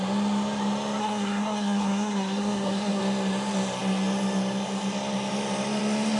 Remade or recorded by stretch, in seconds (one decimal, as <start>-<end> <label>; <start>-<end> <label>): 0.0-1.0 recorded; 1.0-3.0 remade; 3.0-6.2 recorded